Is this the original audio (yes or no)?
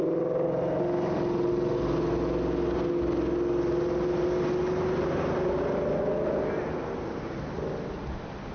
yes